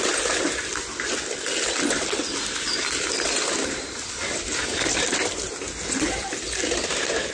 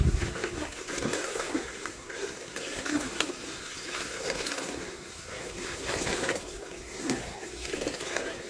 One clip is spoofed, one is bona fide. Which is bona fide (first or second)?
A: first